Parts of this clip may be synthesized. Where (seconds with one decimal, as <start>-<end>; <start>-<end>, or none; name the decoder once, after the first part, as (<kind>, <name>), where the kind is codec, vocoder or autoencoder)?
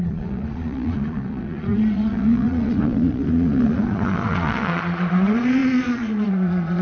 0.0-6.8 (vocoder, Vocos)